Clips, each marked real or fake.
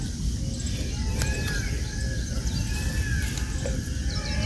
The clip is real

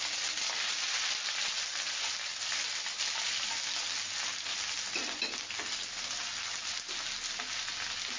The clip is real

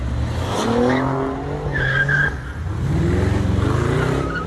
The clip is real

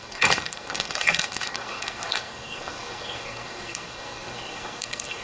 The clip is fake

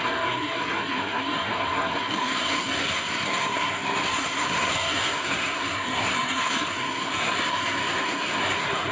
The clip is fake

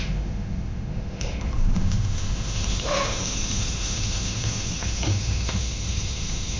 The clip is fake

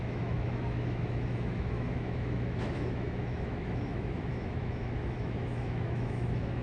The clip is fake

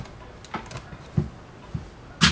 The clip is real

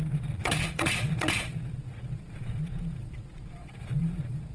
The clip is fake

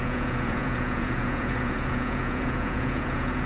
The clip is fake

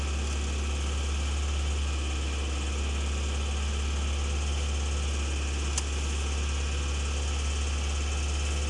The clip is real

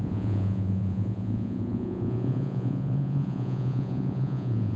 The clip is fake